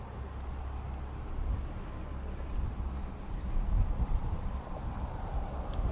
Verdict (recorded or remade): recorded